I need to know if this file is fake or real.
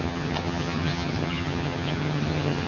fake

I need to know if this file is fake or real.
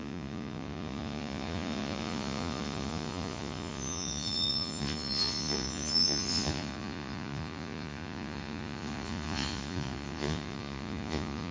fake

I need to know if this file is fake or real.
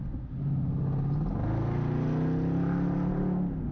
real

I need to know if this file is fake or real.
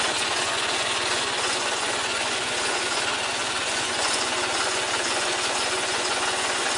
fake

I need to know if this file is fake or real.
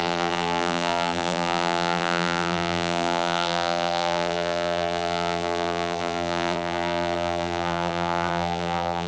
fake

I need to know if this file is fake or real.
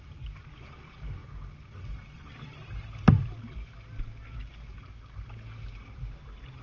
real